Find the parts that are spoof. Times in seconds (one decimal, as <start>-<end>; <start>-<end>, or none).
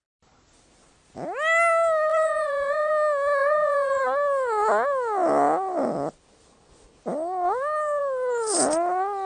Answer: 2.1-2.9; 3.4-4.0